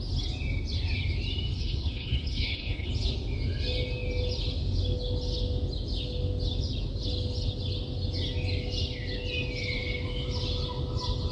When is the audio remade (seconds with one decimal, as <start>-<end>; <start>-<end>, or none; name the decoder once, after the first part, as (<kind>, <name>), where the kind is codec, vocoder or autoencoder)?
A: 1.5-2.9 (codec, HILCodec)